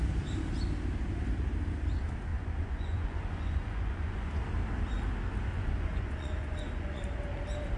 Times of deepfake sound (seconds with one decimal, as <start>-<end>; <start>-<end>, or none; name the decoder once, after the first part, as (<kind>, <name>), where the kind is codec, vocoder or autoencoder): 2.3-4.4 (vocoder, Vocos); 5.5-7.0